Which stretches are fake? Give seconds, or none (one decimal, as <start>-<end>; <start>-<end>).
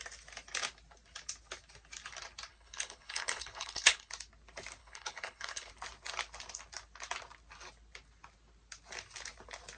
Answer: 2.5-4.1; 4.8-5.7